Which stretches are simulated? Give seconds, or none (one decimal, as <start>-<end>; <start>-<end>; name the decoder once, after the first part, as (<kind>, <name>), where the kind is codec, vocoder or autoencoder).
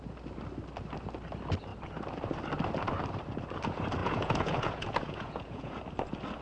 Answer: 4.0-5.8 (vocoder, Vocos)